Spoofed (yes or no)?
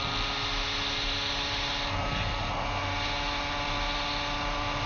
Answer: no